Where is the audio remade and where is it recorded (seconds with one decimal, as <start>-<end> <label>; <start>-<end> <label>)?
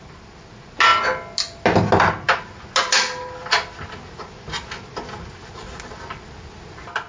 0.0-7.1 recorded